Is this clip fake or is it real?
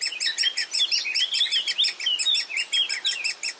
real